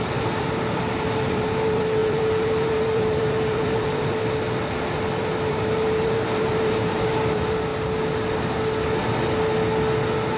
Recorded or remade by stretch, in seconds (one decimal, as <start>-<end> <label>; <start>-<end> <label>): 0.0-4.2 remade; 4.2-5.5 recorded; 5.5-7.7 remade; 7.7-10.4 recorded